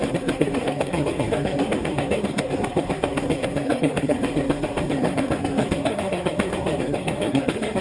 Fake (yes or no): yes